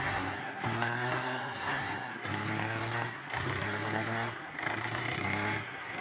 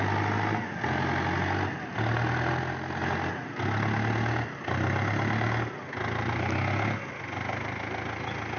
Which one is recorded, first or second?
second